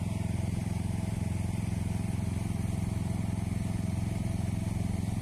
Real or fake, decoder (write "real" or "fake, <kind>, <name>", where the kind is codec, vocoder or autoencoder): real